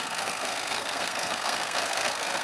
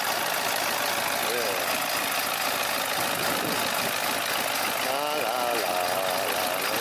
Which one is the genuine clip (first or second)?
second